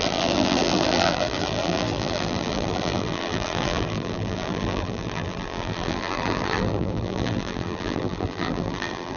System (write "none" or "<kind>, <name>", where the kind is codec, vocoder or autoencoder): vocoder, BigVGAN v2